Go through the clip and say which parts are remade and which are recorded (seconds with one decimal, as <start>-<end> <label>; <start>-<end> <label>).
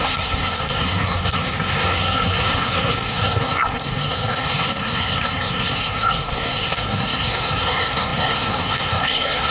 0.0-9.5 remade